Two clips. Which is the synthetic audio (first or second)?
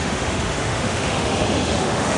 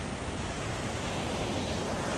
first